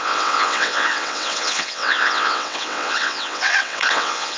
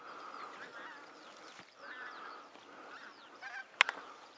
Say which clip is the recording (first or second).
second